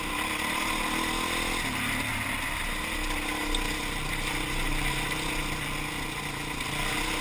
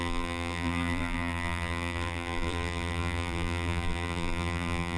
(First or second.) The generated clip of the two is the second